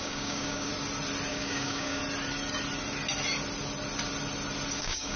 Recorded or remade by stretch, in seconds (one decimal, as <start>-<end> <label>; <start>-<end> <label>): 0.0-0.7 remade; 0.7-1.3 recorded; 1.3-2.0 remade; 2.0-4.8 recorded; 4.8-5.2 remade